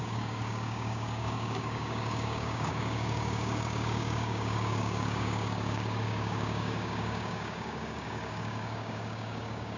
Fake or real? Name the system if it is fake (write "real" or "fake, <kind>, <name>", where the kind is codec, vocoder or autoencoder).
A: fake, codec, DAC